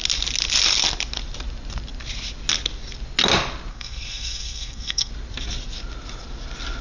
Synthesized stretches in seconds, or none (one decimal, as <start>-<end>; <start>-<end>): 3.7-5.1